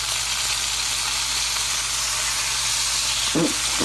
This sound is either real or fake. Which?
real